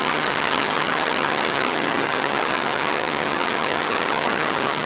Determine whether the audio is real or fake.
fake